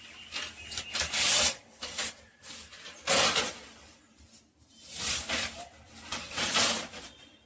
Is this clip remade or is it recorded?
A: recorded